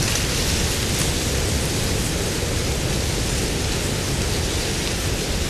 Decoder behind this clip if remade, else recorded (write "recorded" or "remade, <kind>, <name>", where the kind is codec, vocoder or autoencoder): recorded